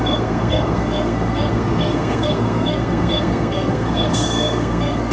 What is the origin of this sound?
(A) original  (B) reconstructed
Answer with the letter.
B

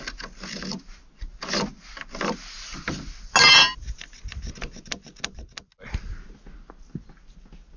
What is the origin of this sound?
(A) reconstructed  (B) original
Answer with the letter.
B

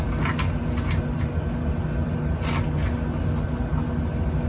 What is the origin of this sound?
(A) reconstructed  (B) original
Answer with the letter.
B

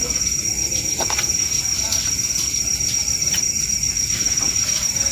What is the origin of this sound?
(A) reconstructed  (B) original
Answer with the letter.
B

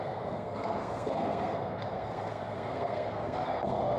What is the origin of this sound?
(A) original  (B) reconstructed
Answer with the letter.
B